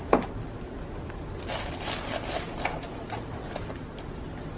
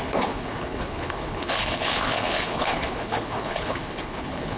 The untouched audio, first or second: first